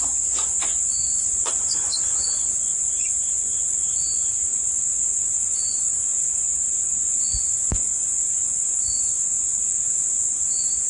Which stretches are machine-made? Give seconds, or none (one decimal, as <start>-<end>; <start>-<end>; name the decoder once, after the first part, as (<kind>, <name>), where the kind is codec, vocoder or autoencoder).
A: 0.0-9.3 (vocoder, Vocos); 9.9-10.9